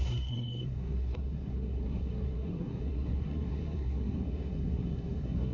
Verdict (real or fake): fake